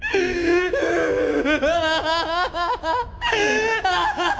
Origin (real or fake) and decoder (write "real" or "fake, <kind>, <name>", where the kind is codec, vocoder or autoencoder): fake, autoencoder, DAC-VAE